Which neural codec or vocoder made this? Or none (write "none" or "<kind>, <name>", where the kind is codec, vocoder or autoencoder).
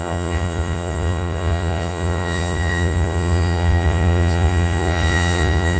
vocoder, Vocos